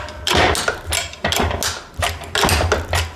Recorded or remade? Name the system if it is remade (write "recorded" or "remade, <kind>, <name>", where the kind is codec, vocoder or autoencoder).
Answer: recorded